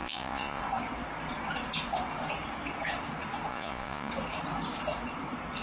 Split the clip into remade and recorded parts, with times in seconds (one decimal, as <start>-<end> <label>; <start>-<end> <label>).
0.0-0.6 remade; 0.6-3.5 recorded; 3.5-4.1 remade; 4.1-5.6 recorded